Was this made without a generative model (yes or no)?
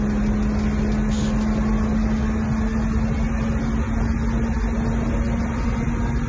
yes